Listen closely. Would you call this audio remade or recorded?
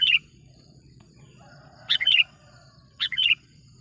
remade